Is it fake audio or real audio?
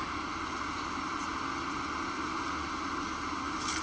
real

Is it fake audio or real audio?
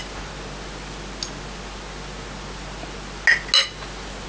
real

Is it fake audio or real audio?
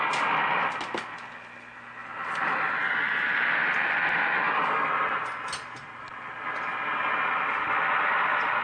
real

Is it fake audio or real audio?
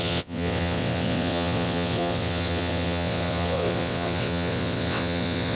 fake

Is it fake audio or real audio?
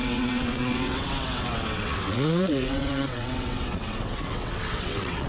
fake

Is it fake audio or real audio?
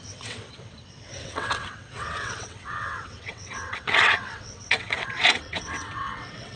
fake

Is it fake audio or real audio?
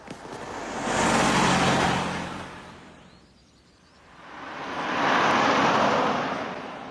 real